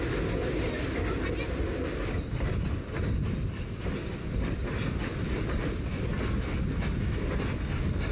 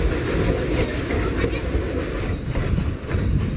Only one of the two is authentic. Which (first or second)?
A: first